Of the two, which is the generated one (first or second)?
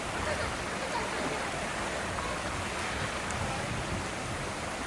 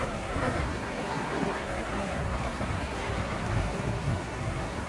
second